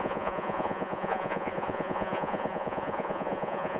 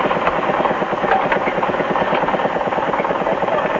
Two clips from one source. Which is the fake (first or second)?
first